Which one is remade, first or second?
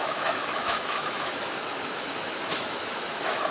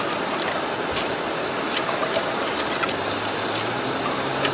first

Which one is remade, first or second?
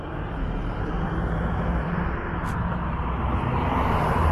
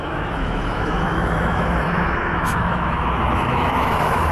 second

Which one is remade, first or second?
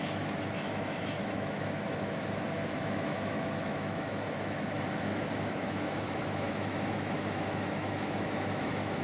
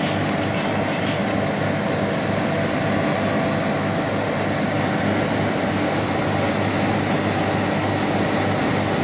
first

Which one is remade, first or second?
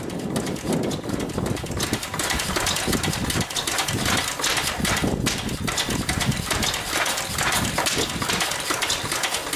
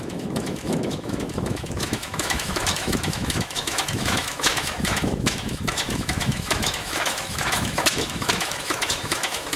second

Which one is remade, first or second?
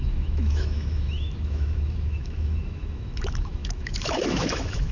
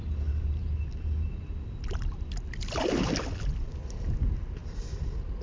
first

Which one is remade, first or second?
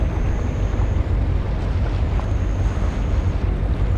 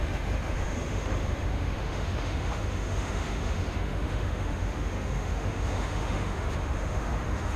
second